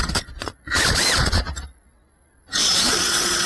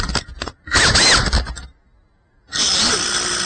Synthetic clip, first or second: first